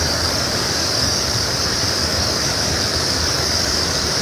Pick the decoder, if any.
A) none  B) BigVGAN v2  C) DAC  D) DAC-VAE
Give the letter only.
C